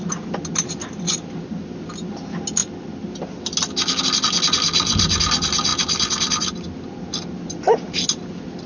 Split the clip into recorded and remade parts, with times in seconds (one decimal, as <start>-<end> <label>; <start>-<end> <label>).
0.0-8.7 recorded